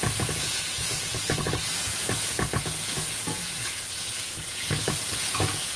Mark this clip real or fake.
fake